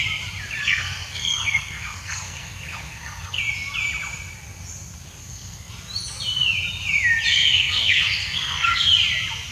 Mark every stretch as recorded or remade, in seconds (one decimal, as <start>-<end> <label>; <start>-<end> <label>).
0.0-0.6 recorded; 0.6-3.4 remade; 3.4-5.2 recorded; 5.2-5.7 remade; 5.7-7.3 recorded; 7.3-8.9 remade; 8.9-9.5 recorded